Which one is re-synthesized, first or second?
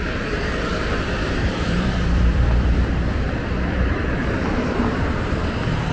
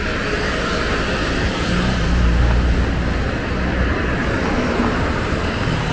first